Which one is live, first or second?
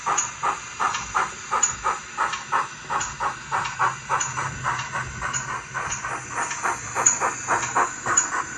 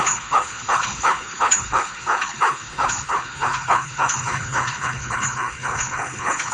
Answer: first